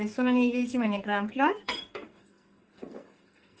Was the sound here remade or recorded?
remade